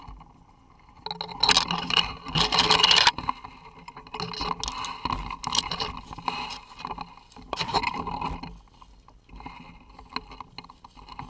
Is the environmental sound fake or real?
real